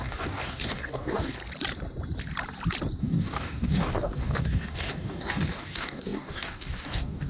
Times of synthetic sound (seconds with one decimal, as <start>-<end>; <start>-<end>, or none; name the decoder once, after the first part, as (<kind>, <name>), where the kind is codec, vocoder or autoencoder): 0.0-1.4 (codec, DAC); 3.0-7.3